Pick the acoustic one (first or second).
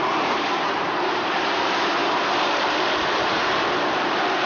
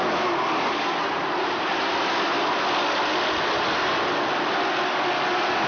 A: second